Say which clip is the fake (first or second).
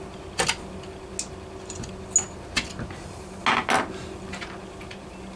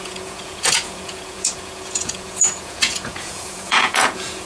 second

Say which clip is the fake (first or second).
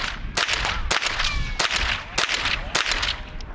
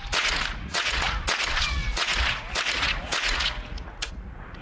second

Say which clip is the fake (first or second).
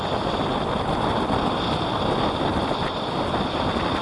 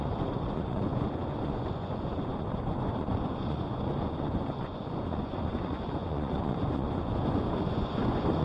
second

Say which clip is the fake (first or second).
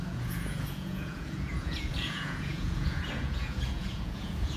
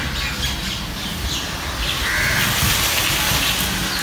first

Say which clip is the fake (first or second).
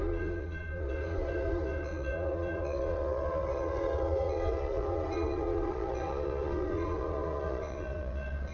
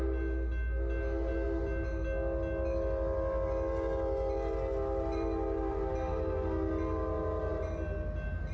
first